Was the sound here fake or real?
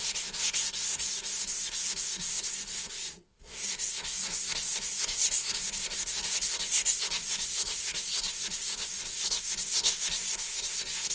fake